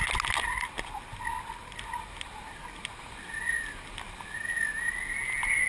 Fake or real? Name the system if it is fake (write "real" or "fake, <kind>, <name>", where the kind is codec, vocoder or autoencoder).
real